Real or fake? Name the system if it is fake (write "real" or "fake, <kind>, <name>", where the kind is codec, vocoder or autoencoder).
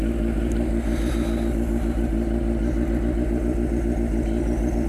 real